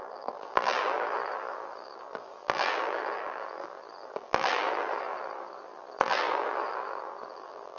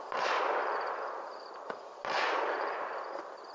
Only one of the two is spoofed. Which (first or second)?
first